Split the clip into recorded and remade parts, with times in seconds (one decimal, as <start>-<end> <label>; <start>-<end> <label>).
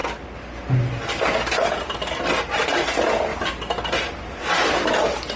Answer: 0.0-5.4 recorded